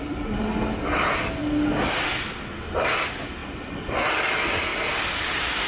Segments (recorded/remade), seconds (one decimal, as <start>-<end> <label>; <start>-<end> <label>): 0.0-5.7 recorded